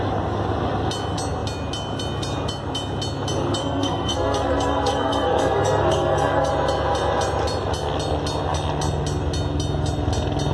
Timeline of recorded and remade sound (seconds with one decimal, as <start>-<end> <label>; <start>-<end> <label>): 0.0-3.6 recorded; 3.6-6.5 remade; 6.5-10.5 recorded